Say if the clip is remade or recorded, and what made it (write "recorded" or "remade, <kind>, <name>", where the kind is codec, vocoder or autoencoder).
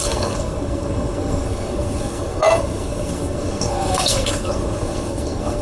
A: remade, codec, SNAC